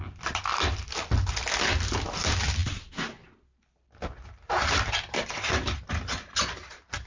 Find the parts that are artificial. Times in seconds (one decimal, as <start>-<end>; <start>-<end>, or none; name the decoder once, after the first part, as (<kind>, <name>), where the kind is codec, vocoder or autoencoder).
none